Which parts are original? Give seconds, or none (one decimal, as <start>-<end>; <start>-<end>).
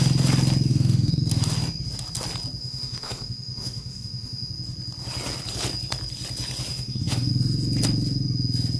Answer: 0.0-0.7; 1.2-2.6; 4.5-6.7; 7.3-8.8